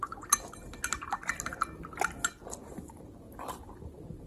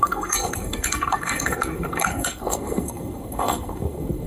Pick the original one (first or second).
first